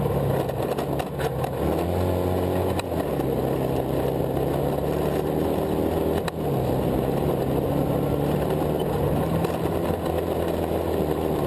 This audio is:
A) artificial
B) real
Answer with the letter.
B